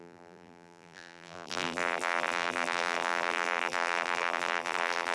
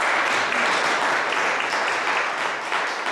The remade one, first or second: first